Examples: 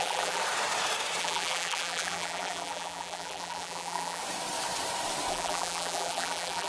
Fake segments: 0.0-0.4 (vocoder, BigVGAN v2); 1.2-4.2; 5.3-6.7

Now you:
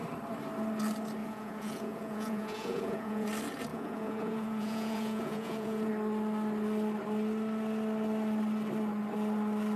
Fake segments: 1.2-3.3 (vocoder, Vocos); 3.7-5.9

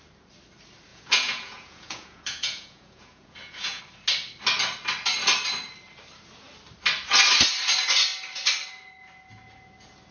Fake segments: 0.9-3.8 (vocoder, Vocos)

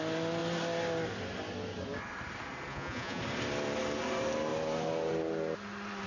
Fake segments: 2.7-3.2 (vocoder, Vocos)

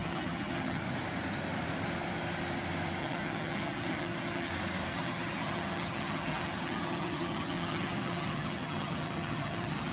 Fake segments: 0.0-0.8 (vocoder, HiFi-GAN); 3.0-4.5; 4.9-9.9

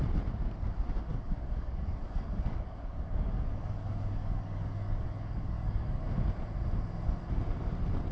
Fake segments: 1.1-6.0 (codec, DAC)